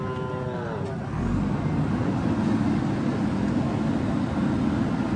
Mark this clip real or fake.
real